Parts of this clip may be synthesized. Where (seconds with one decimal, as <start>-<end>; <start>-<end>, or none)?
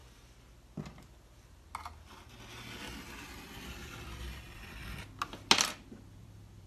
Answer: 3.6-4.8; 5.6-6.7